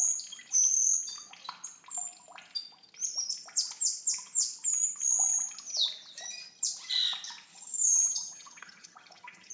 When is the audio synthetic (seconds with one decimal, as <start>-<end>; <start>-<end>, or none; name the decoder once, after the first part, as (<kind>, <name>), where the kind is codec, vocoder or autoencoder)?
7.5-9.5 (vocoder, HiFi-GAN)